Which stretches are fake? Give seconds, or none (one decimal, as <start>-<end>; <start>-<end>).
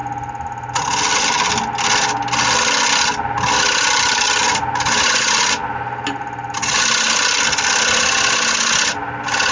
none